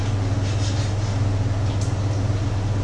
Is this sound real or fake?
real